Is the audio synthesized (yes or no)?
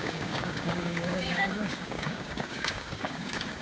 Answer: yes